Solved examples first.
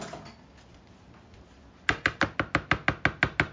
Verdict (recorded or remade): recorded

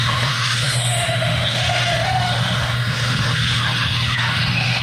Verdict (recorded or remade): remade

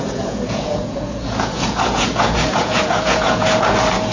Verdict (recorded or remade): remade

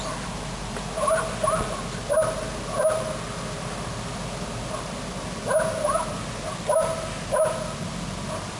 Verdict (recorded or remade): recorded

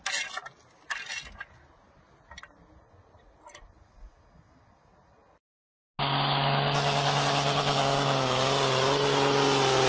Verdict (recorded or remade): recorded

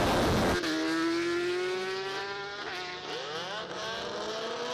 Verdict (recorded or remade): recorded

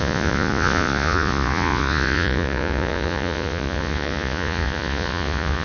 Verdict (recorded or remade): remade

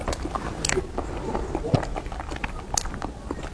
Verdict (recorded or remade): recorded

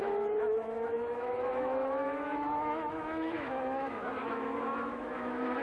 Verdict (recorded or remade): remade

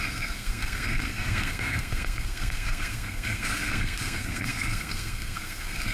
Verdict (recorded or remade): remade